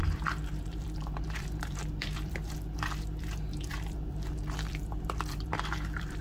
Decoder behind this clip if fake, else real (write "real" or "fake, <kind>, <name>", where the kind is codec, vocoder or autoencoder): fake, vocoder, BigVGAN v2